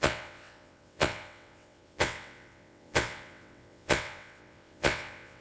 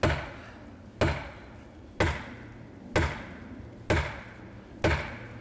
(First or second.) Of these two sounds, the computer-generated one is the first